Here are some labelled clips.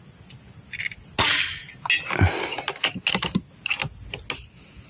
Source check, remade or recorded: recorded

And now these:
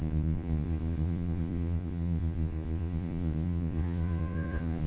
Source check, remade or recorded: remade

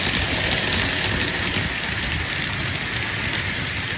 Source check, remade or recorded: recorded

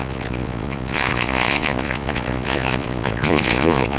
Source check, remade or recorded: remade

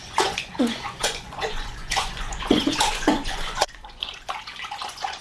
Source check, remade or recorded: remade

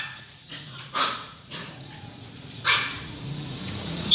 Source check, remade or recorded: remade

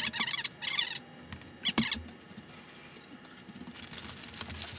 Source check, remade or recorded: recorded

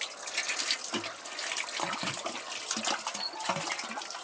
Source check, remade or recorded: recorded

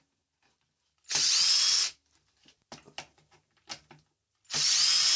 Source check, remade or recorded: recorded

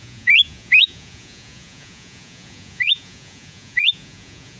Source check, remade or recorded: remade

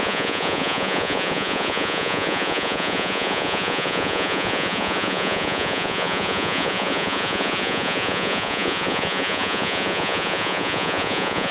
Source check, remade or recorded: remade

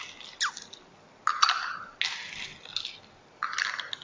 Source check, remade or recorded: recorded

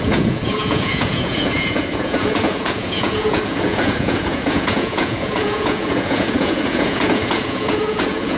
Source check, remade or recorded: remade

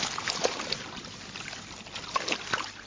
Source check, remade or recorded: recorded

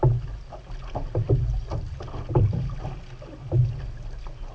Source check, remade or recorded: recorded